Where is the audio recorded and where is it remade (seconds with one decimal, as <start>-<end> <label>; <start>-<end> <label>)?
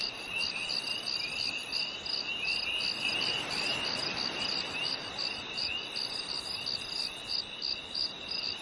0.0-8.6 recorded